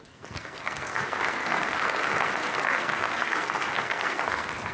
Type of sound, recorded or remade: remade